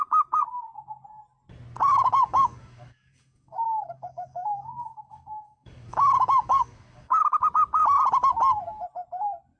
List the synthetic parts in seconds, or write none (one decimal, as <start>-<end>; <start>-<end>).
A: 1.9-7.1